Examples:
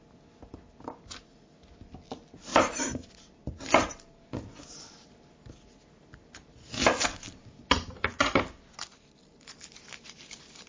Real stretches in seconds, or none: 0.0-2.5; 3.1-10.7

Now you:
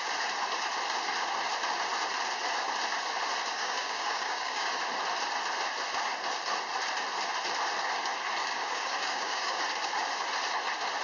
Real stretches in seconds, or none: 0.0-3.5; 4.8-8.4; 9.6-11.0